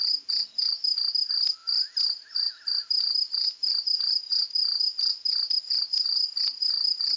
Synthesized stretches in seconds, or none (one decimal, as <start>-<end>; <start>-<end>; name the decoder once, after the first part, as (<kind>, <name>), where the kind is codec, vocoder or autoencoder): none